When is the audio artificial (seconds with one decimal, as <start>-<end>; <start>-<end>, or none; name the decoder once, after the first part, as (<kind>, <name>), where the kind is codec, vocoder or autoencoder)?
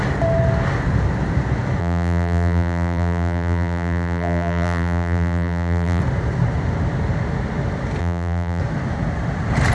1.8-6.0 (vocoder, BigVGAN v2); 8.0-8.6